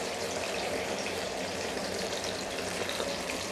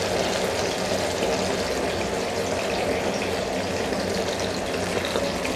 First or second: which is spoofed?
first